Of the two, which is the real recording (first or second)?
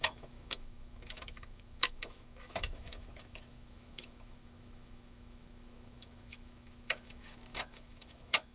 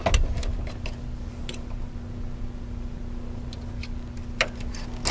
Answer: second